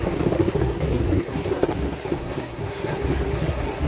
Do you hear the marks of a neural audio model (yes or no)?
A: yes